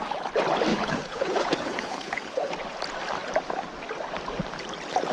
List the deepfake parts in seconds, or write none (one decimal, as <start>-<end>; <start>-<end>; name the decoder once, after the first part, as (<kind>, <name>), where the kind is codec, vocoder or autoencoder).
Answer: 0.7-2.5 (codec, HILCodec)